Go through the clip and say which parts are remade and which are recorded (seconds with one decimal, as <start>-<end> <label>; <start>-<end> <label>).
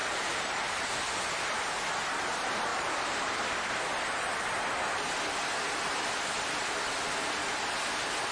0.0-0.8 remade; 0.8-2.7 recorded; 2.7-3.7 remade; 3.7-8.3 recorded